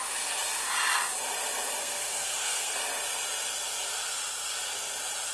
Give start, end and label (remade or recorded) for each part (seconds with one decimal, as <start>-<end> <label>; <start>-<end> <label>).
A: 0.0-1.8 recorded; 1.8-2.8 remade; 2.8-5.3 recorded